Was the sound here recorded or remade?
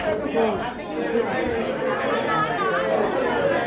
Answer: recorded